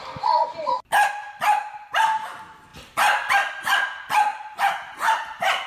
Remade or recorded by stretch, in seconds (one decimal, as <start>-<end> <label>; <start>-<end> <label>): 0.0-4.3 recorded; 4.3-5.2 remade; 5.2-5.7 recorded